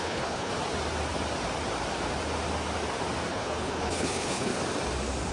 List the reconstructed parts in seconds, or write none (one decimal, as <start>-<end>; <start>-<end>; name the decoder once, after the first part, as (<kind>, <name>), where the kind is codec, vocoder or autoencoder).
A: 0.0-0.5 (codec, HILCodec); 3.3-4.5